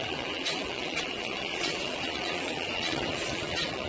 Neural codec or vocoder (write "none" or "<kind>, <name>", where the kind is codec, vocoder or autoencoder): vocoder, Vocos